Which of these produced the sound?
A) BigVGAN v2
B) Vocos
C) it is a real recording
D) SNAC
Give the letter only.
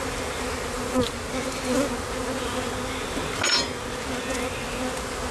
C